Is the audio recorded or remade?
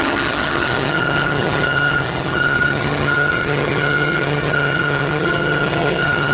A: remade